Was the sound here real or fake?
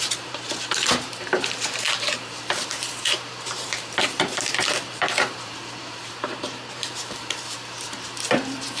fake